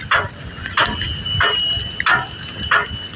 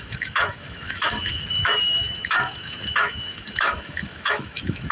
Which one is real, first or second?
first